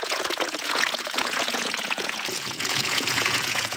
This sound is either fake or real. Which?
fake